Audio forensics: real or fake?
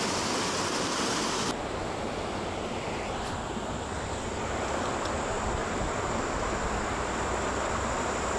real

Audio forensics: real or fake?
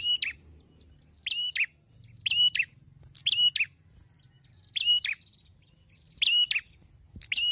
real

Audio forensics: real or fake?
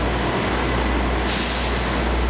real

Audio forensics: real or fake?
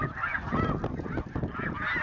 real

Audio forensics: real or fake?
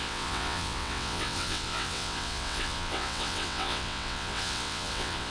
fake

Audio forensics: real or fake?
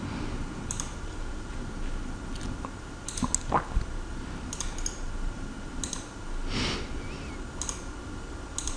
real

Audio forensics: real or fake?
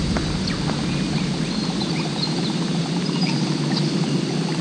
real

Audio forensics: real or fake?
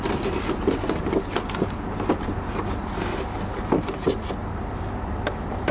real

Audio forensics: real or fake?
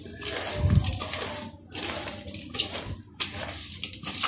real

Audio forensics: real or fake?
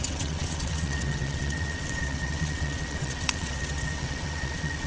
fake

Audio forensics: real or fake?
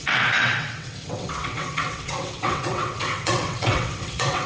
fake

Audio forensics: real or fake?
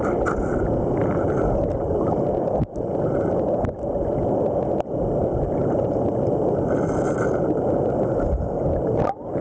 real